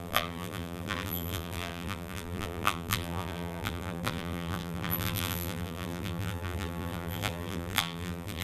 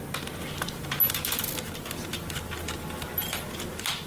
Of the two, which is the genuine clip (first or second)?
second